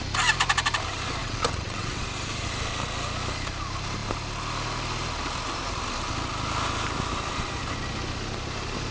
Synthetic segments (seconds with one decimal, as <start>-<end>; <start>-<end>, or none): 1.2-2.0